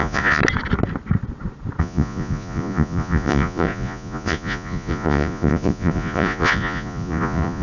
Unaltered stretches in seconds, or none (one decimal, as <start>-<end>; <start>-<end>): 0.4-1.8